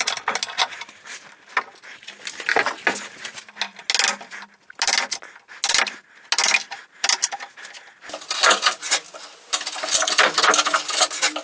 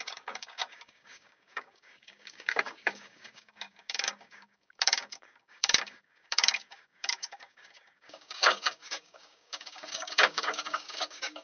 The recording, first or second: first